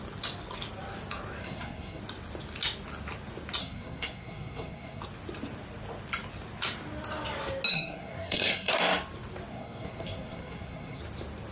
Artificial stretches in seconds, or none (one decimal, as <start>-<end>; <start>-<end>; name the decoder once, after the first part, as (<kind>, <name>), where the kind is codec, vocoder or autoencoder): 1.4-2.0 (codec, SNAC); 3.6-5.0; 7.7-8.7; 9.5-11.0